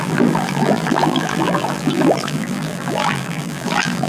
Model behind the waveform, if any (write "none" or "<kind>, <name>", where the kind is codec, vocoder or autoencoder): vocoder, BigVGAN v2